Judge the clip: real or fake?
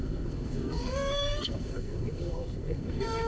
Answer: fake